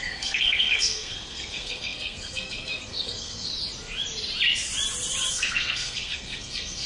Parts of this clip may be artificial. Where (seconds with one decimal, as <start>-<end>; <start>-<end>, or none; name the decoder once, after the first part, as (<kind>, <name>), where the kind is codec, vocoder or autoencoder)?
0.0-3.5 (codec, SNAC); 5.3-6.9